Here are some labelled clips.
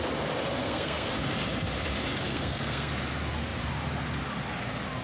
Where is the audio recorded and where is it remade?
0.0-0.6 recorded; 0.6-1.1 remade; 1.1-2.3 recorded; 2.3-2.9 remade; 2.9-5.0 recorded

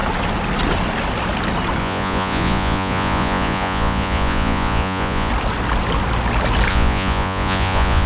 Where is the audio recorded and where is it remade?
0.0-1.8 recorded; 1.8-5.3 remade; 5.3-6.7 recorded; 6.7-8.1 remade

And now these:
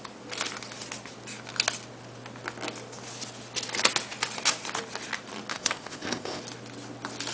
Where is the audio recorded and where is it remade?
0.0-5.5 recorded; 5.5-6.4 remade; 6.4-7.3 recorded

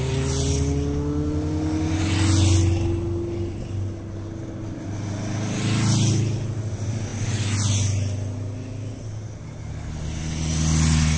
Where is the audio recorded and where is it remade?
0.0-11.2 recorded